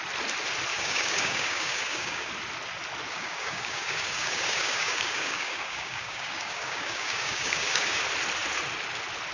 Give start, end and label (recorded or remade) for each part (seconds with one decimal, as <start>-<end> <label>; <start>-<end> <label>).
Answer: 0.0-0.7 recorded; 0.7-2.3 remade; 2.3-3.1 recorded; 3.1-8.0 remade; 8.0-9.3 recorded